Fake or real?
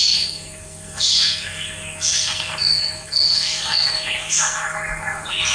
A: fake